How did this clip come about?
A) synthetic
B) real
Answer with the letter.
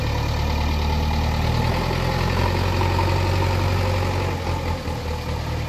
B